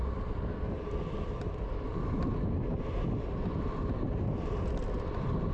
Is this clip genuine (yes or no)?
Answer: yes